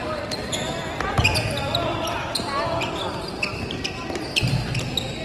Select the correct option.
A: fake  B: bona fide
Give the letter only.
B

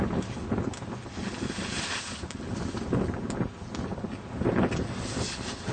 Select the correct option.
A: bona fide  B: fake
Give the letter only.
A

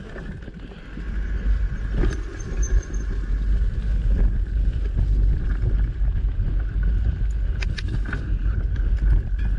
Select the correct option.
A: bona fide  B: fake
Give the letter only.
A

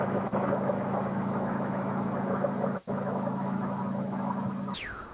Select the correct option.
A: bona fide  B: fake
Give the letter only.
B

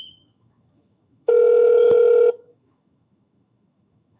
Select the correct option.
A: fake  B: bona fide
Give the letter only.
A